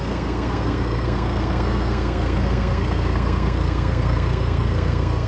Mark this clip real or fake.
fake